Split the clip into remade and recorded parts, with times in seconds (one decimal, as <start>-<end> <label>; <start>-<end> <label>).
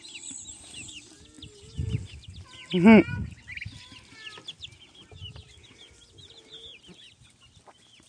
0.0-8.1 recorded